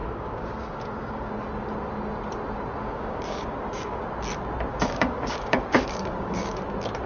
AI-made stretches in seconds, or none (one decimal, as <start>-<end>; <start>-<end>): 0.0-1.3; 2.8-4.0; 4.7-6.6